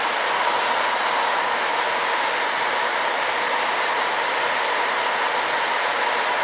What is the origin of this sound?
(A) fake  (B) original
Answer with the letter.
B